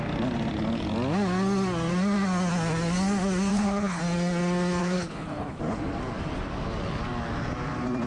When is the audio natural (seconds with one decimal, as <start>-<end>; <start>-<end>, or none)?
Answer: 0.0-3.5; 4.0-4.8; 5.6-8.1